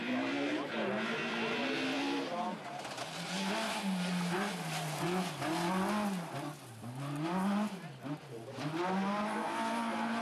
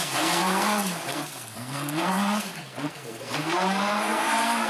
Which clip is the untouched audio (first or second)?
first